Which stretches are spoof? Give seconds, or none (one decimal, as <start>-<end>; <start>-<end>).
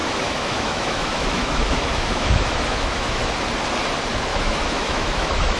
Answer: 0.0-3.3; 4.3-5.6